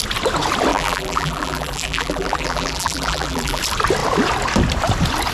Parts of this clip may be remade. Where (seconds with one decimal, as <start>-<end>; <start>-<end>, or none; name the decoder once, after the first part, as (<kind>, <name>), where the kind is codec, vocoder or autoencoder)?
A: 0.7-3.6 (vocoder, BigVGAN v2)